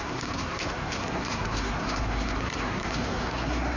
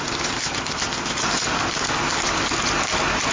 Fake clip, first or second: first